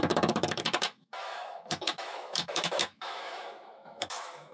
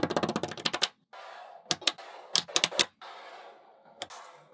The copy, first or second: first